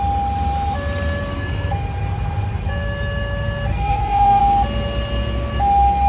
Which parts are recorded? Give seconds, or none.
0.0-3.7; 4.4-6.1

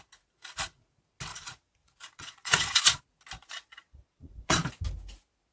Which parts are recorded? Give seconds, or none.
0.0-1.3; 3.0-3.4; 4.6-5.5

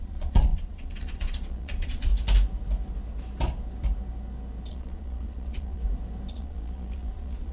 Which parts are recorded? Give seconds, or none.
2.1-4.7; 5.8-6.3

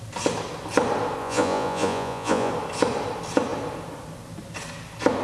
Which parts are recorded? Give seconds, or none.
0.0-1.2; 2.5-5.2

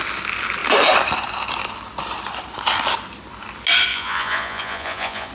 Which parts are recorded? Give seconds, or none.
0.0-3.9

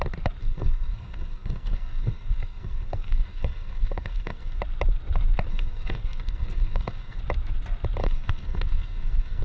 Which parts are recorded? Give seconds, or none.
0.0-0.4; 4.6-5.5; 7.2-8.0